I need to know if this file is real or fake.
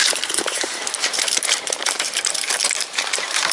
fake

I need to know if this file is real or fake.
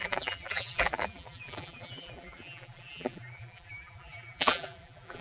fake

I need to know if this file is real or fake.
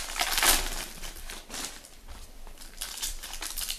fake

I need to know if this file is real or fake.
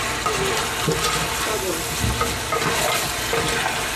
real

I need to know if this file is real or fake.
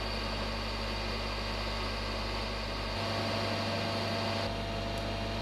real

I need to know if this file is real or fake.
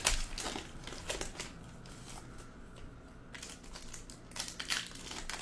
real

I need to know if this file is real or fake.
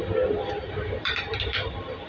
fake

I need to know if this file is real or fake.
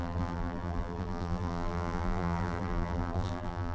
fake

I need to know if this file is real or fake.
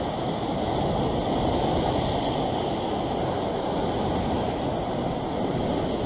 real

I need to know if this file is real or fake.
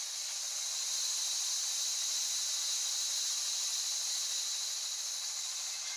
real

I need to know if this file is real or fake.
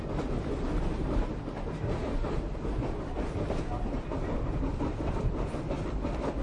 fake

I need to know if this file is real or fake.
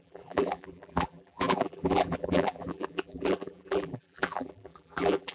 fake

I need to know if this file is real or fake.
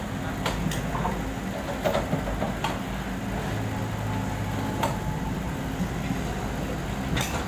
real